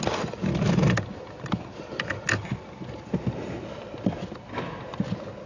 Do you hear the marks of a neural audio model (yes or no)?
no